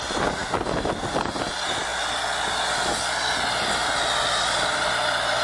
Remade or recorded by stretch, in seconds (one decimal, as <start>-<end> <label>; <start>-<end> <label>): 0.0-5.4 recorded